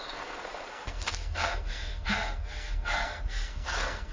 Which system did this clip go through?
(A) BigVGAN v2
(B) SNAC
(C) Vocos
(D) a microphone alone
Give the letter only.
B